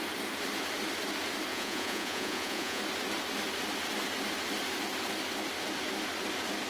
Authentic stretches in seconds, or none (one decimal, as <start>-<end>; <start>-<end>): 0.0-1.5; 2.8-6.7